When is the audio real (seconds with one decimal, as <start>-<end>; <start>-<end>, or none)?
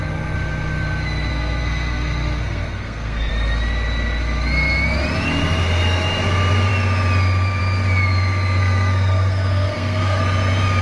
0.0-1.3; 3.3-8.6; 10.2-10.8